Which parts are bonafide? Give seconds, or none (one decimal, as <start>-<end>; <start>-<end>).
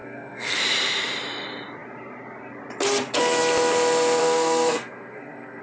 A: 0.6-4.2